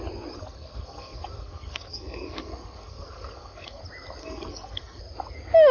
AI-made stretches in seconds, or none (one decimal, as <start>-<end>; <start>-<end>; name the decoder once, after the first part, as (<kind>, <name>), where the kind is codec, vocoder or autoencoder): 0.4-3.8 (codec, SNAC); 4.2-5.0